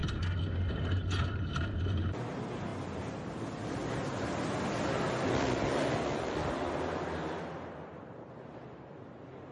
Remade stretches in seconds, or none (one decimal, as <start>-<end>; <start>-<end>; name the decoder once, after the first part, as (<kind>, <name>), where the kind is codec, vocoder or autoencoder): 0.7-2.7 (vocoder, BigVGAN v2); 6.7-9.5